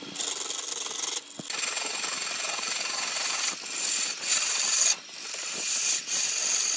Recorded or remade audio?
recorded